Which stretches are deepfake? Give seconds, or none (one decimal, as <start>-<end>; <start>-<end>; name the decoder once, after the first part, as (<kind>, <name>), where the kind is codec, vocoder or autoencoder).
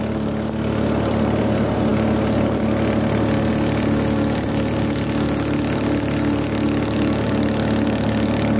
none